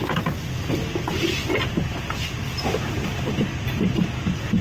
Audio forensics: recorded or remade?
recorded